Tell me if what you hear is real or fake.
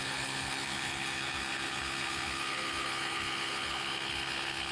fake